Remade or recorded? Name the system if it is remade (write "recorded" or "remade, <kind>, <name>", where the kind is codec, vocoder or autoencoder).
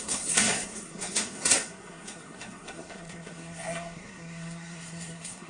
remade, codec, SNAC